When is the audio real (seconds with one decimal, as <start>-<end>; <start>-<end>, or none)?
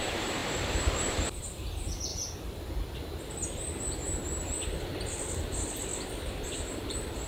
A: 2.1-3.8; 5.9-6.7